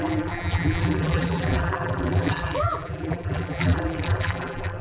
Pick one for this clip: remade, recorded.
remade